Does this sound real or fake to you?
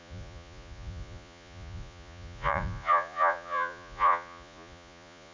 fake